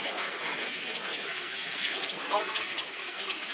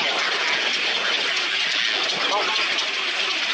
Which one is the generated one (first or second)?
first